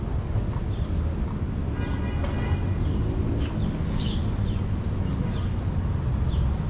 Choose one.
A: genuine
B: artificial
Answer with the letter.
A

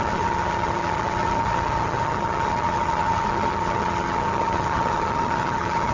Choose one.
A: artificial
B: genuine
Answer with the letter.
A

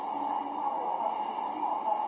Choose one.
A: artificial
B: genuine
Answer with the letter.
B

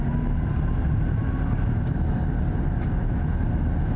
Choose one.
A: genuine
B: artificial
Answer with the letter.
A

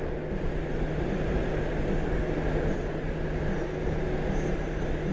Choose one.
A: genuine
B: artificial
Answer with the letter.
A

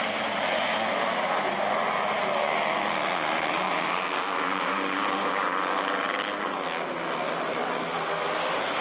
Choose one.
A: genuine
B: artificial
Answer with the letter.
A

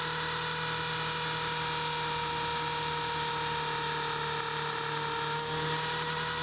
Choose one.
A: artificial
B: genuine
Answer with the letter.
B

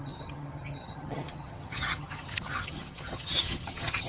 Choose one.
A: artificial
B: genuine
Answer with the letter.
A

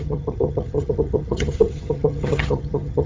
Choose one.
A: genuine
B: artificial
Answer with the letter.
B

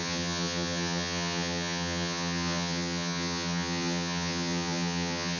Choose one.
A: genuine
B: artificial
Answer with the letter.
B